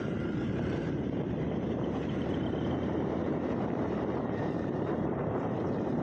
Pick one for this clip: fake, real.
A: fake